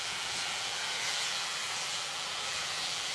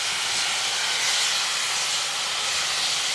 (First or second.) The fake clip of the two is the first